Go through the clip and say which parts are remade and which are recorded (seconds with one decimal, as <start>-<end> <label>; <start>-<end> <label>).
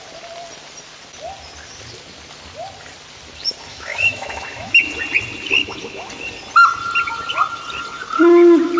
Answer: 0.0-3.7 recorded; 3.7-4.9 remade; 4.9-5.6 recorded; 5.6-6.1 remade; 6.1-8.8 recorded